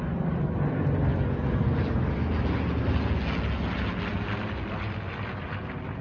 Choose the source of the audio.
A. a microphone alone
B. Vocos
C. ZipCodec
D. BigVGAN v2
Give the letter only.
A